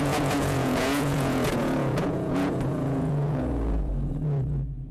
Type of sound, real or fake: fake